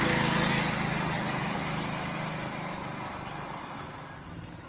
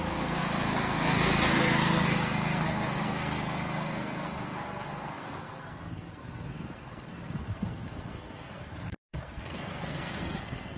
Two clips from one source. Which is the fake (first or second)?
second